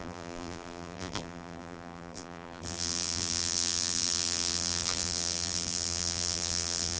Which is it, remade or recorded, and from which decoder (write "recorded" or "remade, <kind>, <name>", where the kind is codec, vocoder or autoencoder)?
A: remade, vocoder, BigVGAN v2